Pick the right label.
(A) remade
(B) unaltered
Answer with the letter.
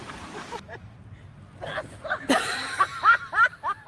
B